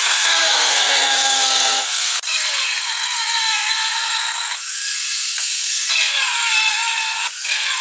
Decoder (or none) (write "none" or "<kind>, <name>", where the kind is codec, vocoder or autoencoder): codec, SNAC